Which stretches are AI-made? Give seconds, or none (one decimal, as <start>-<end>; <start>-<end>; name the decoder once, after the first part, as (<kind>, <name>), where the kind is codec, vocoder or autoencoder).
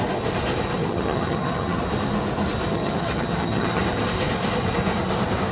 0.8-1.8 (vocoder, HiFi-GAN); 2.7-3.8